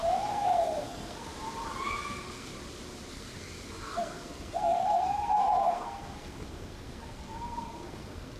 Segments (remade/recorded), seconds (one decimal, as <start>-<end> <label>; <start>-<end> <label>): 0.0-1.3 remade; 1.3-1.8 recorded; 1.8-2.5 remade; 2.5-3.1 recorded; 3.1-8.4 remade